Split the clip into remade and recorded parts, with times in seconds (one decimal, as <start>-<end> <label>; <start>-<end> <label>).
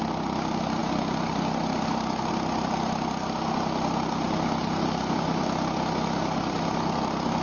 0.0-7.4 recorded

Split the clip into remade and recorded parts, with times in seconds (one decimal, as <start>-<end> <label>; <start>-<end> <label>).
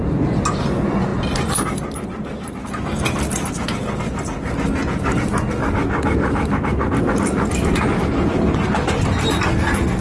0.0-10.0 recorded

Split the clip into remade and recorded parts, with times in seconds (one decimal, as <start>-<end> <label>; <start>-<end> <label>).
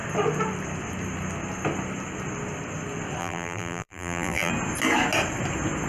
0.0-3.2 recorded; 3.2-4.5 remade; 4.5-5.9 recorded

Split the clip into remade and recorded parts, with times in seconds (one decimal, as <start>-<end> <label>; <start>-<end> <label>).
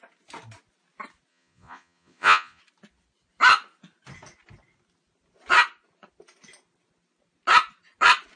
0.0-1.3 recorded; 1.3-2.6 remade; 2.6-8.4 recorded